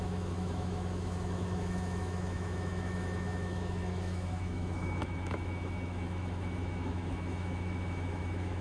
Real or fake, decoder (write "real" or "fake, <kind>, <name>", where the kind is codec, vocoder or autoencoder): fake, autoencoder, DAC-VAE